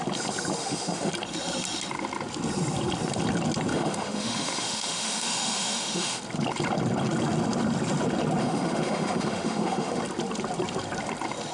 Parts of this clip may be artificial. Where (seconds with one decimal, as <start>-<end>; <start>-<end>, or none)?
0.6-1.1; 3.7-6.2; 8.4-10.0

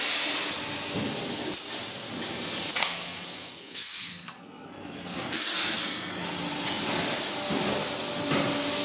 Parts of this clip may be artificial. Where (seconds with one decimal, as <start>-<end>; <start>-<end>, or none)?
2.8-6.1

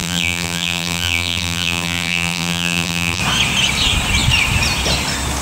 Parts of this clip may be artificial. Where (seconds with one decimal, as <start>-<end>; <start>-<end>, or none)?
0.0-3.2

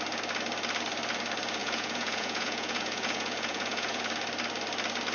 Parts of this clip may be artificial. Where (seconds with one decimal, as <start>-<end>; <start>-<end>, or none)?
1.6-4.0

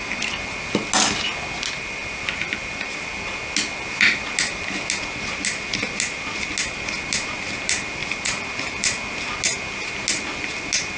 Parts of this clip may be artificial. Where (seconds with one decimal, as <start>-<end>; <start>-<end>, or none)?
none

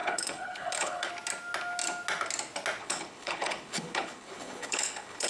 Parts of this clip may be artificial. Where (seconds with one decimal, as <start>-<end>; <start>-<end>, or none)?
0.0-1.1; 2.8-5.3

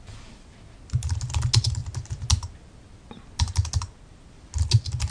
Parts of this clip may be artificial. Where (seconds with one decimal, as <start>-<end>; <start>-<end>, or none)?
none